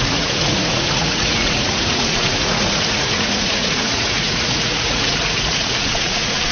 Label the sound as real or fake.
fake